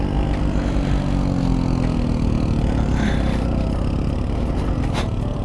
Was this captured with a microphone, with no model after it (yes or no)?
yes